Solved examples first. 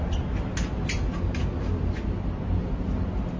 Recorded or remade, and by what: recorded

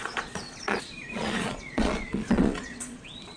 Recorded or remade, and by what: remade, vocoder, Vocos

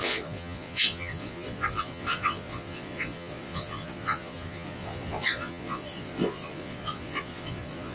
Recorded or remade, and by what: remade, vocoder, Vocos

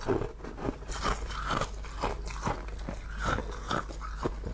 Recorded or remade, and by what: recorded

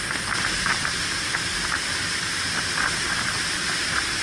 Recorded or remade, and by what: recorded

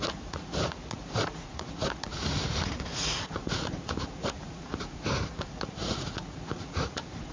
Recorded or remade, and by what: remade, vocoder, Vocos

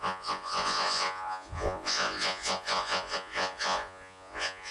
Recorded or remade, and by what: remade, vocoder, Vocos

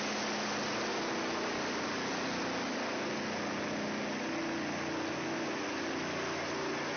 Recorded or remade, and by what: recorded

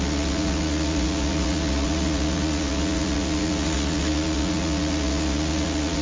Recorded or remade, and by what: remade, vocoder, Vocos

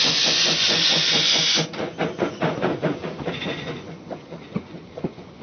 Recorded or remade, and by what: remade, vocoder, Vocos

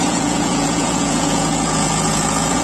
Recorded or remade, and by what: remade, vocoder, Vocos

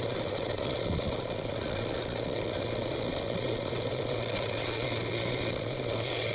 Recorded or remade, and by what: remade, vocoder, Vocos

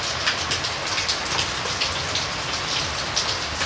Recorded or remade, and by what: recorded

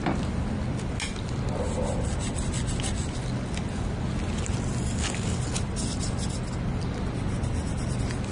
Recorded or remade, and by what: recorded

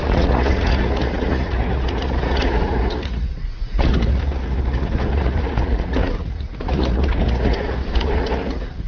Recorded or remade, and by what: remade, vocoder, Vocos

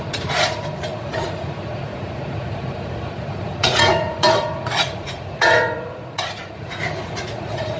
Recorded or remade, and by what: remade, vocoder, Vocos